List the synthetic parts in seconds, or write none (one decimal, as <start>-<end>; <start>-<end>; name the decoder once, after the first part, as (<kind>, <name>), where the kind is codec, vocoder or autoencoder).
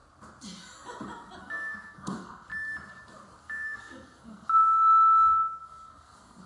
1.4-2.5 (codec, SNAC); 3.4-6.5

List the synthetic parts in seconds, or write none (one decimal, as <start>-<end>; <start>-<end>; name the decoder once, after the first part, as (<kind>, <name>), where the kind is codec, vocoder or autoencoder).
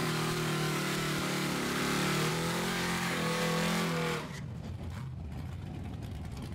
0.0-1.8 (codec, DAC); 2.3-3.4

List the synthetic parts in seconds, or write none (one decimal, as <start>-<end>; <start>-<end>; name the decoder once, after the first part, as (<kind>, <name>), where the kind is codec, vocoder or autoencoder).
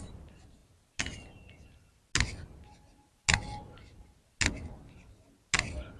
none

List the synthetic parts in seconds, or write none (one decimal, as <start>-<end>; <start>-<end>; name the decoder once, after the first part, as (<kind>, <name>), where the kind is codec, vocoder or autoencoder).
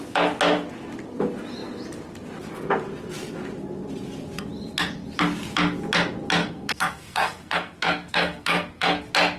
6.4-9.0 (codec, SNAC)